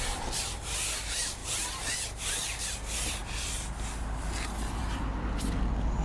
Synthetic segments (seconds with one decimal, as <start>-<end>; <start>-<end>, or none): none